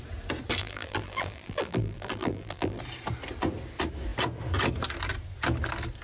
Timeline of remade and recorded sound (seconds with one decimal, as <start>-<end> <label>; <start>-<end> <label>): 0.0-0.6 recorded; 0.6-2.8 remade; 2.8-6.0 recorded